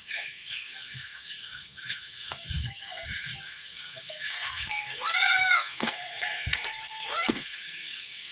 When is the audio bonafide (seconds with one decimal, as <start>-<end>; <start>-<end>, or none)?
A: none